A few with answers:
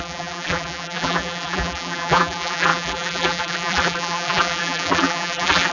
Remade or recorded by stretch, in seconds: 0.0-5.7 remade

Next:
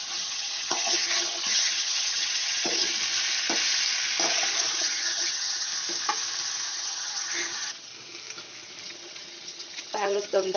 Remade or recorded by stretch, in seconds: 0.0-2.9 remade; 2.9-4.8 recorded; 4.8-5.7 remade; 5.7-6.7 recorded; 6.7-7.9 remade; 7.9-8.8 recorded; 8.8-10.6 remade

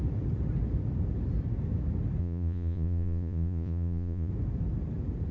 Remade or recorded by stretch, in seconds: 0.0-2.2 recorded; 2.2-4.3 remade; 4.3-5.3 recorded

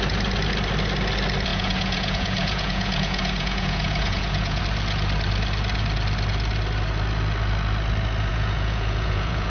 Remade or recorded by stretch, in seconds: 0.0-1.5 recorded; 1.5-4.6 remade; 4.6-8.3 recorded; 8.3-9.5 remade

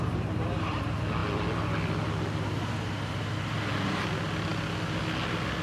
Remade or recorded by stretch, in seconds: 0.0-5.6 recorded

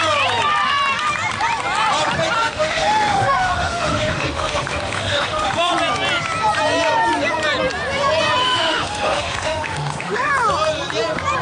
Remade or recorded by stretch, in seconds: 0.0-2.4 recorded; 2.4-5.7 remade; 5.7-8.4 recorded; 8.4-10.3 remade; 10.3-11.4 recorded

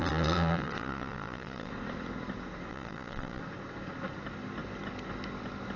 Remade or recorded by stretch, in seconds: 0.0-1.7 remade; 1.7-2.7 recorded; 2.7-3.4 remade; 3.4-5.8 recorded

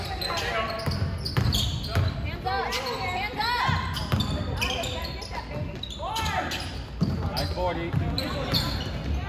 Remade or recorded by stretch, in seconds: 0.0-9.3 recorded